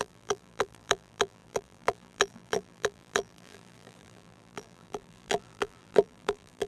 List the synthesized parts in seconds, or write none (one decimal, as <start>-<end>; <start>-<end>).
0.0-6.7

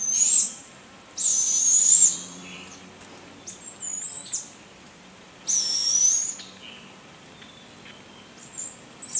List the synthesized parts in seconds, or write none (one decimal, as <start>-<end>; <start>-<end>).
1.3-2.9; 3.9-5.0; 5.8-6.3

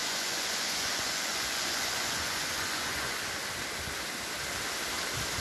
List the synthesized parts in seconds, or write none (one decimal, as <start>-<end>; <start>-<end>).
0.0-3.2

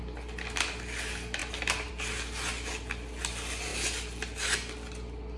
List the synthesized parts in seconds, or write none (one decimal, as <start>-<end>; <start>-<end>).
none

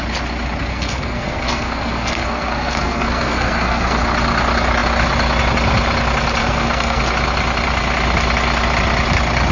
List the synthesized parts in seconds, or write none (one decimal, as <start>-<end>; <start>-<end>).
0.7-4.0; 6.4-7.0

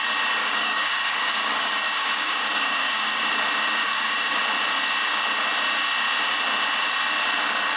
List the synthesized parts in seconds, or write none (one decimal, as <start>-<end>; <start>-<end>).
0.4-3.2; 3.8-4.4

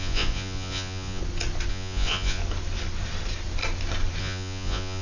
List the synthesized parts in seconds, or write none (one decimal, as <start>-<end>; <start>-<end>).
0.0-1.2; 1.7-2.4; 4.2-5.0

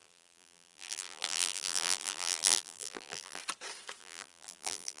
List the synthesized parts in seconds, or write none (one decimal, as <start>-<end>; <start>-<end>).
0.0-3.4; 4.0-5.0